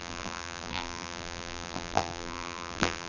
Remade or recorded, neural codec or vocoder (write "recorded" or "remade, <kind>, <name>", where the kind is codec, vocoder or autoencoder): remade, vocoder, BigVGAN v2